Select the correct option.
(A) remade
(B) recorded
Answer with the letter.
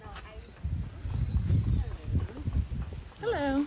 B